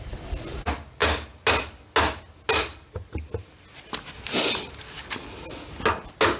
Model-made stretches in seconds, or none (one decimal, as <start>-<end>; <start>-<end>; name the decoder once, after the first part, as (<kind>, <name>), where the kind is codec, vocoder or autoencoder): none